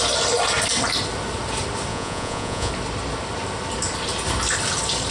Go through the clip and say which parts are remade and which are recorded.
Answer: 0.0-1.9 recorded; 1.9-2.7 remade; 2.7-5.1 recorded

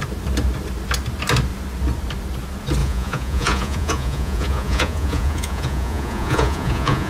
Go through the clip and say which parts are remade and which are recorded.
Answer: 0.0-2.8 recorded; 2.8-7.1 remade

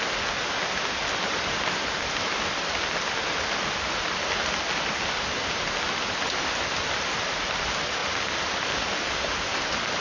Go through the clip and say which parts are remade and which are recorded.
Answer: 0.0-10.0 recorded

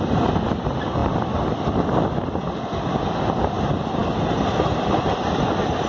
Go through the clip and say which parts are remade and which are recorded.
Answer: 0.0-5.9 recorded

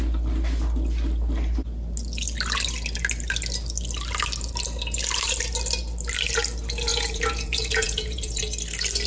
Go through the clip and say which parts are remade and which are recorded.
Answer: 0.0-6.9 recorded; 6.9-8.4 remade; 8.4-9.1 recorded

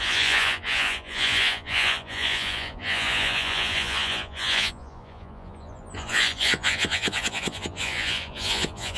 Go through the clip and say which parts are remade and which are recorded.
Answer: 0.0-9.0 remade